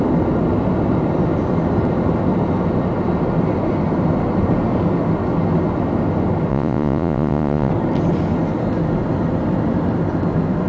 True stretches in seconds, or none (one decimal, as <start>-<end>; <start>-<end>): 0.0-6.5; 7.7-10.7